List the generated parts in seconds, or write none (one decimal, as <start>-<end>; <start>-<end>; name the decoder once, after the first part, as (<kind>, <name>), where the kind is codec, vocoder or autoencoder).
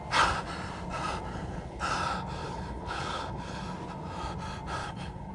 1.3-1.8 (codec, HILCodec); 2.4-3.6; 4.8-5.3